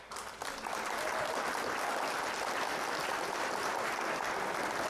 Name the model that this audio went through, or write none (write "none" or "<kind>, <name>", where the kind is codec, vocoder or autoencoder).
none